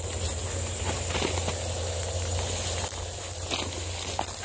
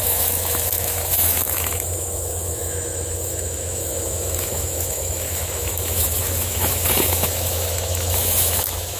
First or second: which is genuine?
first